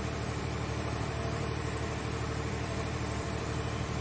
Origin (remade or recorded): remade